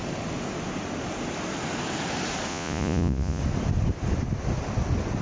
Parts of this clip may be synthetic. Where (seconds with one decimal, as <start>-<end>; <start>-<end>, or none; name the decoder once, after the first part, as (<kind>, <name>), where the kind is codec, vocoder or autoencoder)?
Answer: 2.5-3.4 (vocoder, Vocos)

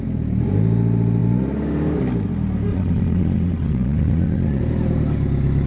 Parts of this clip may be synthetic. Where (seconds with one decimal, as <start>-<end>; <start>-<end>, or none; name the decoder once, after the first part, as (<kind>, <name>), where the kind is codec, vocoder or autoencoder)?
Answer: 2.7-4.6 (vocoder, Vocos)

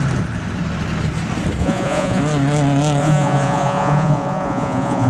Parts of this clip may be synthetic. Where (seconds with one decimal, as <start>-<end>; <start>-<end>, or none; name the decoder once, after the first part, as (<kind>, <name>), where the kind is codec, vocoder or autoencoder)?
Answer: 1.6-2.2 (vocoder, Vocos); 3.0-5.1

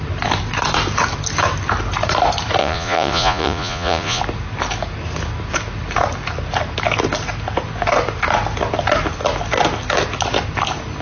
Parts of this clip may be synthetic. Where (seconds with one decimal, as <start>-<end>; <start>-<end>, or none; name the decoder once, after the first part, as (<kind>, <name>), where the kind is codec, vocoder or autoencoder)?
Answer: 2.6-4.2 (vocoder, Vocos)

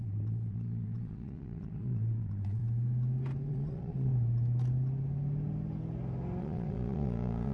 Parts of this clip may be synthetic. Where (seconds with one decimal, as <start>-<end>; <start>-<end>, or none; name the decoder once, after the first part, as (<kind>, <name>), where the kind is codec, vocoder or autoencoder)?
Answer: 0.0-2.6 (vocoder, Vocos); 3.5-4.1; 6.4-7.5

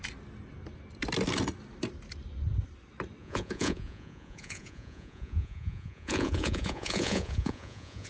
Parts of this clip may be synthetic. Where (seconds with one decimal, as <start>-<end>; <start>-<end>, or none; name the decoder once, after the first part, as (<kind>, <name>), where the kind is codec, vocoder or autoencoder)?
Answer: 3.2-8.1 (vocoder, Vocos)

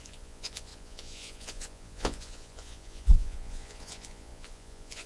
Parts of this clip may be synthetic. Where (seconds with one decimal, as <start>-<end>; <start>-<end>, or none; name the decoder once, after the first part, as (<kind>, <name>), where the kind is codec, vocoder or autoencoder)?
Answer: 0.0-5.1 (vocoder, Vocos)

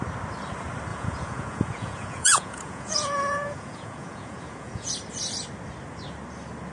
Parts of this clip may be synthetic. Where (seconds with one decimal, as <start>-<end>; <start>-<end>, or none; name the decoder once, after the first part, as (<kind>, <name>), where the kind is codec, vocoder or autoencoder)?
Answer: 0.9-4.9 (vocoder, Vocos)